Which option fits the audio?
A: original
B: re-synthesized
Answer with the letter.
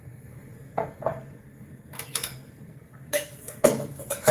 B